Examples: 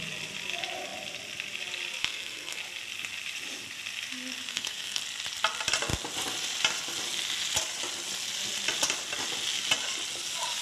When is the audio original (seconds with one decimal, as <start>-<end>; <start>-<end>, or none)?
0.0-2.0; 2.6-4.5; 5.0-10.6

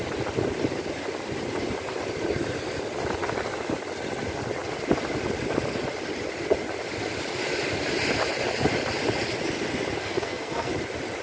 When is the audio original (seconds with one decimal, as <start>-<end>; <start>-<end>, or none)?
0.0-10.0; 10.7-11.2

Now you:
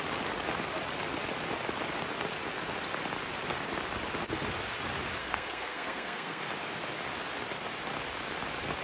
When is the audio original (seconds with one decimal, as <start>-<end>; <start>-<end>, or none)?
0.0-5.2; 6.4-8.8

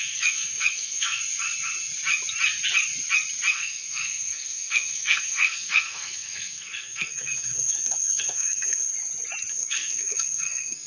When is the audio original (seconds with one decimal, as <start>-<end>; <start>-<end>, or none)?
1.2-3.5; 8.9-9.5

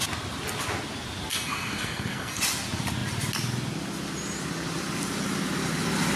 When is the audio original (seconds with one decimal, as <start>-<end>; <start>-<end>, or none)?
0.0-1.3; 2.4-6.2